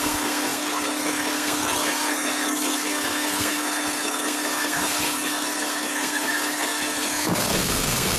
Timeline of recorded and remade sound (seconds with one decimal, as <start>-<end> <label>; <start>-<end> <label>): 0.0-8.2 remade